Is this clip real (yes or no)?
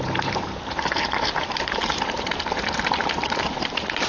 no